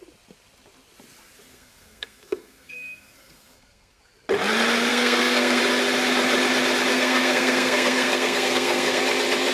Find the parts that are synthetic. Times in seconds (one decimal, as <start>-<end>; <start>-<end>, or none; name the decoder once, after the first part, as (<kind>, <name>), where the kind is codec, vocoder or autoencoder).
1.5-4.0 (codec, SNAC); 4.9-5.6; 6.9-9.0